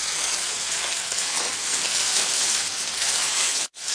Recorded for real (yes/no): no